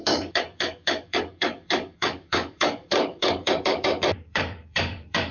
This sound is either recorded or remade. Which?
remade